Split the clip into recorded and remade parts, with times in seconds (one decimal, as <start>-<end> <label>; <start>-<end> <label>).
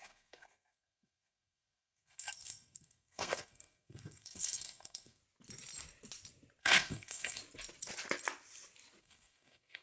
0.0-5.2 remade; 5.2-6.6 recorded; 6.6-7.4 remade; 7.4-9.0 recorded; 9.0-9.8 remade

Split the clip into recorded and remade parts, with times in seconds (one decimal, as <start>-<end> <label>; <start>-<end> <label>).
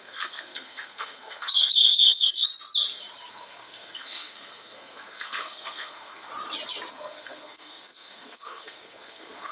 0.0-2.5 remade; 2.5-3.3 recorded; 3.3-6.3 remade; 6.3-6.9 recorded; 6.9-9.5 remade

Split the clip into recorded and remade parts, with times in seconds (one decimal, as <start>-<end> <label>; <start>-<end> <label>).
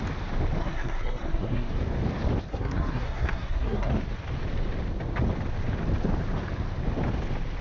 0.0-0.6 recorded; 0.6-1.7 remade; 1.7-2.5 recorded; 2.5-3.9 remade; 3.9-7.6 recorded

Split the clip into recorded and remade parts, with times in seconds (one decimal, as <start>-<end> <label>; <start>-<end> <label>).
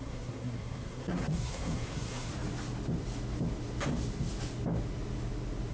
0.0-2.3 remade; 2.3-5.7 recorded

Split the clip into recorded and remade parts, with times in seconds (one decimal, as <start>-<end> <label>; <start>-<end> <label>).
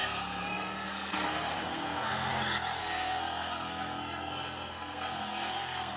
0.0-2.3 remade; 2.3-2.8 recorded; 2.8-6.0 remade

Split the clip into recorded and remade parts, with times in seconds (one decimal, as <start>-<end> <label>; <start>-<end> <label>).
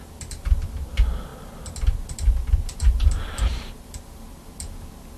0.0-5.2 recorded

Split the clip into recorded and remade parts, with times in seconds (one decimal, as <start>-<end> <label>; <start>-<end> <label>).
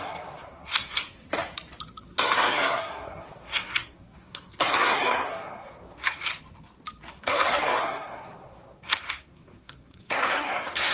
0.0-1.2 remade; 1.2-2.0 recorded; 2.0-6.3 remade; 6.3-7.1 recorded; 7.1-10.9 remade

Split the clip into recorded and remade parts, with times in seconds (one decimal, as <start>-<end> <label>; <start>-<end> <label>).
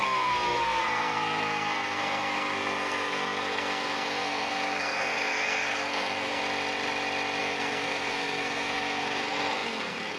0.0-6.4 remade; 6.4-7.4 recorded; 7.4-10.2 remade